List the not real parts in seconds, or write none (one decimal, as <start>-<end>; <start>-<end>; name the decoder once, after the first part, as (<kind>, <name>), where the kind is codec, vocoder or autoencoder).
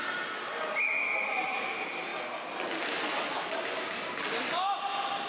none